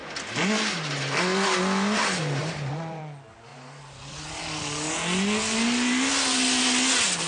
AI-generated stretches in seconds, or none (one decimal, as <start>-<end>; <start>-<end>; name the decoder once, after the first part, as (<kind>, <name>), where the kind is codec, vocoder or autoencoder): 2.4-3.0 (vocoder, BigVGAN v2)